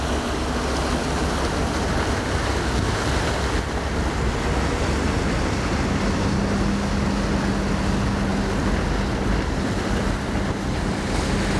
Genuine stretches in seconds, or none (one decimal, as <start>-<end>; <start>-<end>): 0.0-11.6